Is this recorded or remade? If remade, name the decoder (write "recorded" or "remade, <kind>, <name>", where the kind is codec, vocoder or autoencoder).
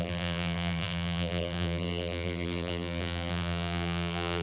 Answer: remade, vocoder, BigVGAN v2